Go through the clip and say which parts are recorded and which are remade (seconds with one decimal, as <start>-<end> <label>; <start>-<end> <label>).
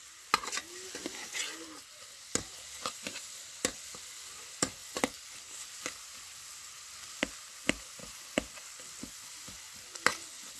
0.0-10.6 recorded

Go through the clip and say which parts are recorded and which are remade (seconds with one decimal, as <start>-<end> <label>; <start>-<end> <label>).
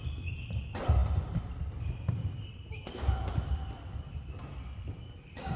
0.0-5.6 recorded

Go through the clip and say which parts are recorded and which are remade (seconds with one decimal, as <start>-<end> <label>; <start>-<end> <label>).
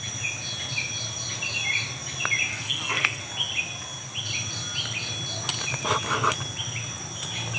0.0-2.5 recorded; 2.5-3.2 remade; 3.2-7.6 recorded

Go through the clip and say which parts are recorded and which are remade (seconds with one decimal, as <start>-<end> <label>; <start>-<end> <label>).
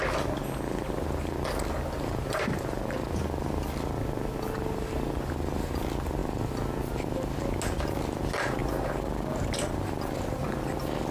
0.0-8.6 recorded; 8.6-10.6 remade; 10.6-11.1 recorded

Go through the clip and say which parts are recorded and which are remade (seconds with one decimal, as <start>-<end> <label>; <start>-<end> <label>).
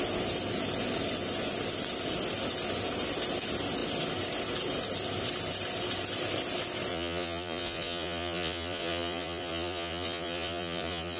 0.0-6.9 recorded; 6.9-11.2 remade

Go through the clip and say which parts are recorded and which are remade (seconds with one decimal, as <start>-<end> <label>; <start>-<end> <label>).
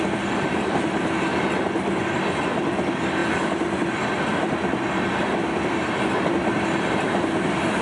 0.0-7.8 recorded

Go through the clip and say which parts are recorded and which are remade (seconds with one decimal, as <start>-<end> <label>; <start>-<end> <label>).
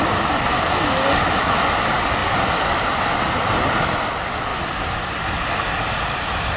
0.0-6.6 recorded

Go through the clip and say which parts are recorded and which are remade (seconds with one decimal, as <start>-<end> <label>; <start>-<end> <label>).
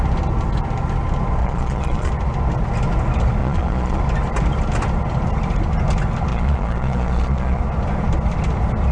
0.0-1.4 recorded; 1.4-2.1 remade; 2.1-3.4 recorded; 3.4-4.0 remade; 4.0-6.3 recorded; 6.3-7.6 remade; 7.6-8.9 recorded